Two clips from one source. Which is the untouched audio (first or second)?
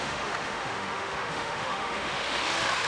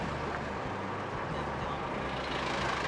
second